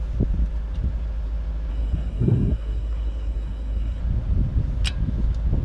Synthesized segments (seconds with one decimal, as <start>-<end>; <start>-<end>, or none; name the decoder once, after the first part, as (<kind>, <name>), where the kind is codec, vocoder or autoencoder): 1.7-4.0 (codec, SNAC)